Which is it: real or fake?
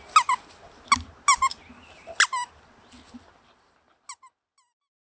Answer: real